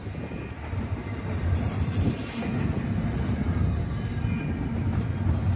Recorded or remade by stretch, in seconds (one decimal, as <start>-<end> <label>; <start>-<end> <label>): 0.0-3.4 remade; 3.4-5.6 recorded